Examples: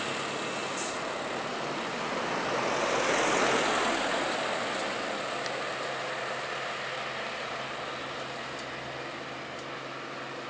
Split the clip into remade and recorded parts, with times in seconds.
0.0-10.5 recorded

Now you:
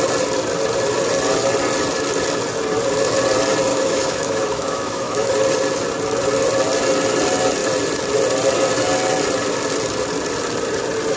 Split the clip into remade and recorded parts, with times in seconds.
0.0-3.7 recorded; 3.7-5.3 remade; 5.3-11.2 recorded

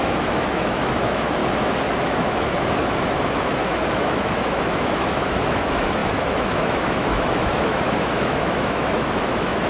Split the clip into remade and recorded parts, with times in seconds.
0.0-1.4 remade; 1.4-2.0 recorded; 2.0-9.7 remade

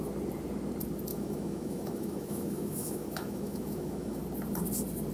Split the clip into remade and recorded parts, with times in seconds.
0.0-1.1 recorded; 1.1-4.2 remade; 4.2-5.1 recorded

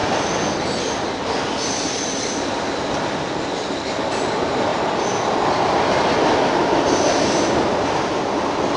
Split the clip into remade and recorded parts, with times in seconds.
0.0-8.8 recorded